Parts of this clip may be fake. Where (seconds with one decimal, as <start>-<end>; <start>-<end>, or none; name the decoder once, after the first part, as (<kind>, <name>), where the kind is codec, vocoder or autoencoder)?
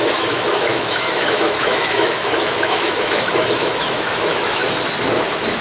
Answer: 0.0-4.6 (autoencoder, DAC-VAE)